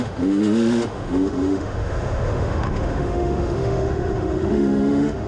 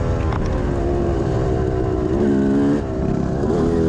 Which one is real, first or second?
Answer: second